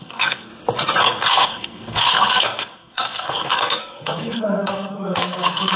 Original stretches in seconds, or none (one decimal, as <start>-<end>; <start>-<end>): 0.5-1.0